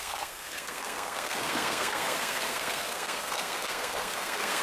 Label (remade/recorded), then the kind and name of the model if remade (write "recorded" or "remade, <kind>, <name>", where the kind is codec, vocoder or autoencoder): remade, codec, SNAC